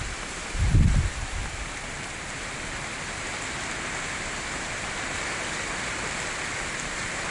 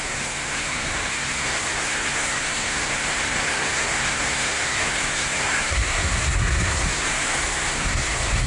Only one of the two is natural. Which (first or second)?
first